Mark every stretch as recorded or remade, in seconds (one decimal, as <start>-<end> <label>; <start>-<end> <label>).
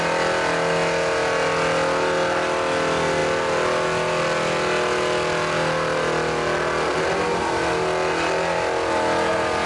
0.0-9.7 recorded